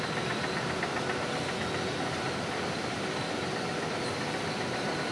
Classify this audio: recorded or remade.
recorded